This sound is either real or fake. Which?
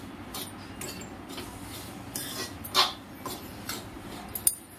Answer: real